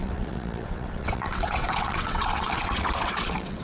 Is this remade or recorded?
remade